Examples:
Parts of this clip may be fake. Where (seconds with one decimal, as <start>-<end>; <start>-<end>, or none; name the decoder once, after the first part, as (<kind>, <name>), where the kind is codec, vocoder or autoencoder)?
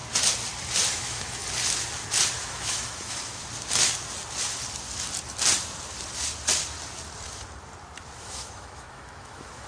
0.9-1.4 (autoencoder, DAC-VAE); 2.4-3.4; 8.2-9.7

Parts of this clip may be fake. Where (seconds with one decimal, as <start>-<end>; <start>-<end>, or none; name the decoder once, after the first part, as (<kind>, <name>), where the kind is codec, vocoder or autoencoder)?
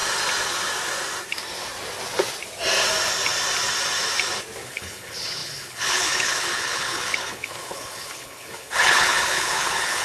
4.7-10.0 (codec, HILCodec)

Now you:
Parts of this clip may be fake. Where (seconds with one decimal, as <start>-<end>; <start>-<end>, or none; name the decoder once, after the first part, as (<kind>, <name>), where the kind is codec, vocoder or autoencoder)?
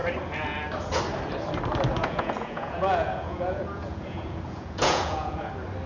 2.0-5.5 (vocoder, Vocos)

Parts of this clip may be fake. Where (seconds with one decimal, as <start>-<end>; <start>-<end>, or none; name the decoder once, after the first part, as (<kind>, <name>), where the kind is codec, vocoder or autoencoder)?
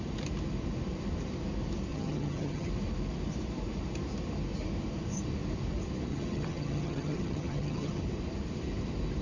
1.9-2.7 (vocoder, HiFi-GAN); 6.1-8.0